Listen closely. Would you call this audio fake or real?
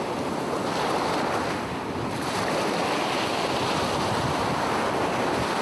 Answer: real